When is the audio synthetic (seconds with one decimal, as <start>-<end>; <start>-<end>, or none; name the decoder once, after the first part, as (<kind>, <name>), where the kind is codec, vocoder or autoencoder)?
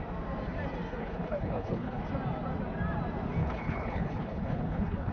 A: 1.0-2.0 (codec, HILCodec); 3.4-5.1